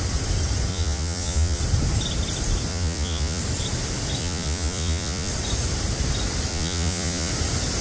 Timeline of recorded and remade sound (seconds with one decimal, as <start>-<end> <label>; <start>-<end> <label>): 0.0-0.7 recorded; 0.7-1.6 remade; 1.6-2.7 recorded; 2.7-3.4 remade; 3.4-4.2 recorded; 4.2-5.3 remade; 5.3-6.5 recorded; 6.5-7.3 remade; 7.3-7.8 recorded